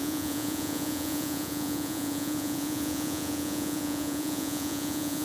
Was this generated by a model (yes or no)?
yes